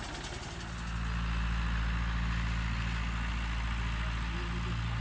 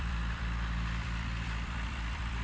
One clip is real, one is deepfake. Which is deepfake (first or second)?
second